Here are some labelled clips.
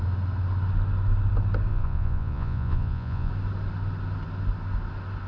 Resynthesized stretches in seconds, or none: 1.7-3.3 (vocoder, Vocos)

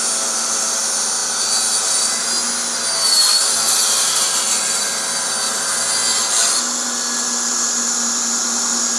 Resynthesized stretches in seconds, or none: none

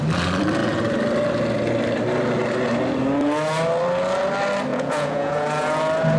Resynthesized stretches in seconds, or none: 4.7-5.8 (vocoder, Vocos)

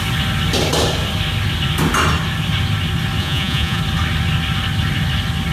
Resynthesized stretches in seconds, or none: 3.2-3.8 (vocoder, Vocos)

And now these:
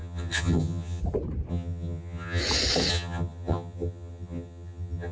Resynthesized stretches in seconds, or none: 0.0-1.0 (vocoder, HiFi-GAN); 1.5-2.4; 2.9-5.1

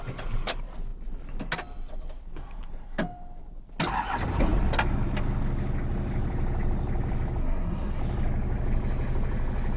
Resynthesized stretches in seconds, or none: 7.4-8.0 (codec, SNAC)

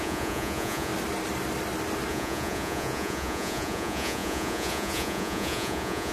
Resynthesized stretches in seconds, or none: 0.0-0.9 (vocoder, Vocos); 2.1-6.1

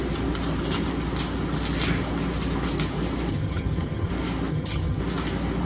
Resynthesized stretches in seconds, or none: 3.3-4.1 (vocoder, HiFi-GAN); 4.5-5.0